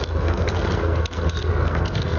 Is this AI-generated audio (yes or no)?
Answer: yes